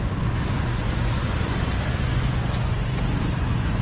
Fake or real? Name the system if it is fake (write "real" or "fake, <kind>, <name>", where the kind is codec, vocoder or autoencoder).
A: fake, vocoder, Vocos